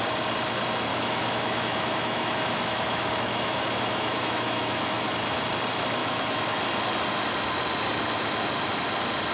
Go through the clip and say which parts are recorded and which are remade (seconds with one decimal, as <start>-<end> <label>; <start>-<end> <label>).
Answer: 0.0-0.9 recorded; 0.9-5.4 remade; 5.4-6.0 recorded; 6.0-6.6 remade; 6.6-9.3 recorded